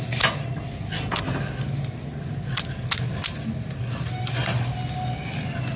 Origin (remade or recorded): recorded